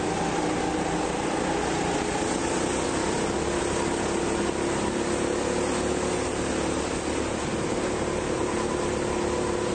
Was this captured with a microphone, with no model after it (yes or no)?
yes